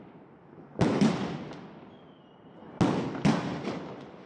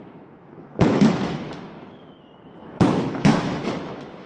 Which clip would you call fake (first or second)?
second